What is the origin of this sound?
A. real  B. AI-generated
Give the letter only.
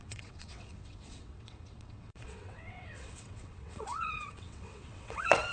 B